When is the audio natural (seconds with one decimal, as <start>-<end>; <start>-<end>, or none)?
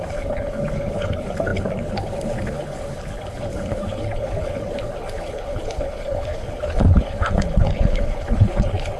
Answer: none